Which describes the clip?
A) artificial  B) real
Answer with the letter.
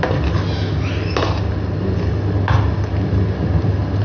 B